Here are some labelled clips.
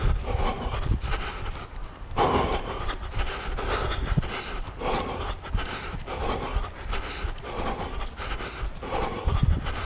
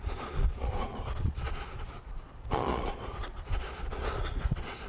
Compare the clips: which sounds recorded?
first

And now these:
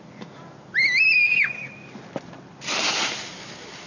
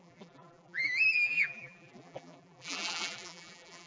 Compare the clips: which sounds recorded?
first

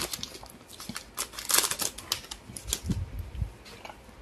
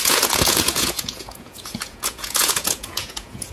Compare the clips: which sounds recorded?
first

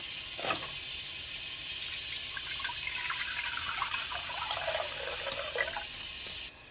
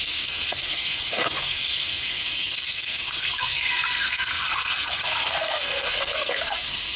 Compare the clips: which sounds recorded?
first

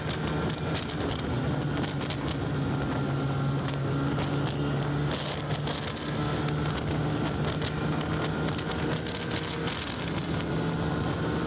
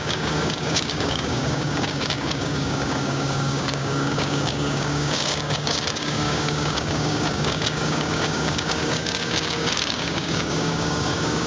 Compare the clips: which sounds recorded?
first